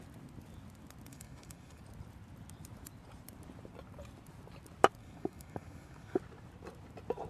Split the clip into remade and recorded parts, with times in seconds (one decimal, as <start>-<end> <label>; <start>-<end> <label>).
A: 0.0-1.1 recorded; 1.1-1.8 remade; 1.8-5.0 recorded; 5.0-6.2 remade; 6.2-7.3 recorded